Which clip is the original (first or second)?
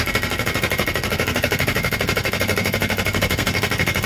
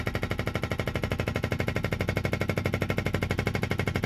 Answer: second